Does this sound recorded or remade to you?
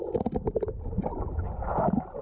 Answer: recorded